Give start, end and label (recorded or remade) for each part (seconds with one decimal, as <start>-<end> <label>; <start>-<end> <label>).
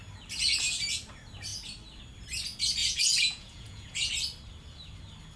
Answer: 0.0-2.8 recorded; 2.8-4.1 remade; 4.1-5.4 recorded